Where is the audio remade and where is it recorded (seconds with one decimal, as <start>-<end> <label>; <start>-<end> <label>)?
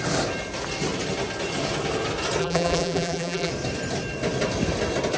0.0-2.4 recorded; 2.4-3.5 remade; 3.5-5.2 recorded